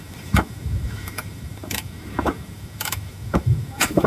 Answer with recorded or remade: remade